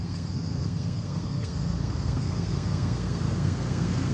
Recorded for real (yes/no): no